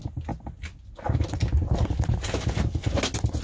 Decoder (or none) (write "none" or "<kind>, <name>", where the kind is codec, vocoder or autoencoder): none